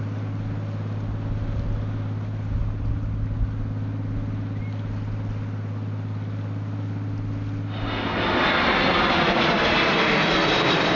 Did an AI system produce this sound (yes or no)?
no